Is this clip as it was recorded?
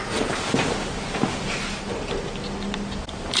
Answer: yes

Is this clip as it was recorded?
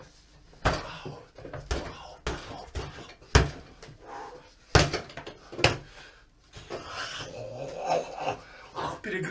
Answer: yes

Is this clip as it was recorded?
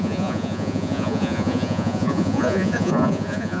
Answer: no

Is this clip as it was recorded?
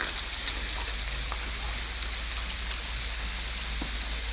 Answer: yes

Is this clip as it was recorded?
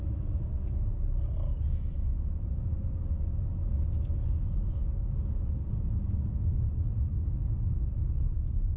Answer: yes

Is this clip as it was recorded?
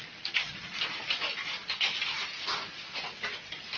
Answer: yes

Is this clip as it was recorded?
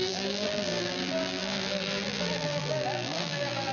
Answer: no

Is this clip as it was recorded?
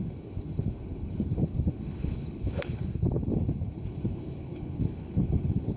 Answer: no